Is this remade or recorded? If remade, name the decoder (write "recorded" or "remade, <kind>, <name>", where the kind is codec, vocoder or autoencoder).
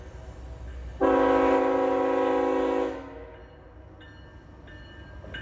recorded